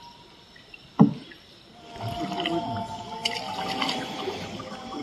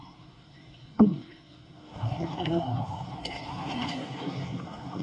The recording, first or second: first